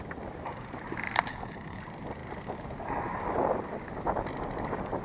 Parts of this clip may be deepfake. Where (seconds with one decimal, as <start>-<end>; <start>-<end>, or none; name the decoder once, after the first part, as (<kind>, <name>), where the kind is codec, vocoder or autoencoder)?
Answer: 1.3-1.8 (codec, HILCodec)